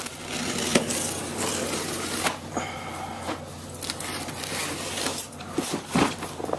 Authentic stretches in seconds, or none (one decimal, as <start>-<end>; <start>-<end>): 0.0-5.1; 5.7-6.6